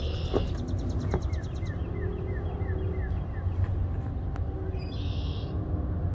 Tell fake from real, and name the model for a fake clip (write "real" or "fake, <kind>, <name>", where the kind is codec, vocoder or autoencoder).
real